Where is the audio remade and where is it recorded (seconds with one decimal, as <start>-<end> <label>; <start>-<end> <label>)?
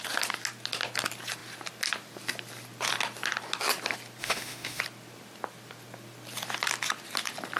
0.0-4.2 recorded; 4.2-4.8 remade; 4.8-7.6 recorded